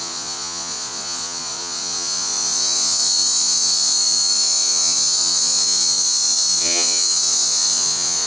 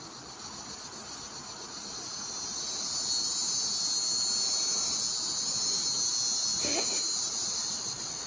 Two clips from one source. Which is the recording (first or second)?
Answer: second